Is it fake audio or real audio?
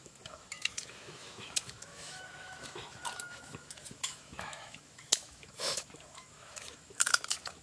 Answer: fake